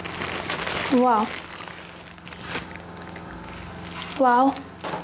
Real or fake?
real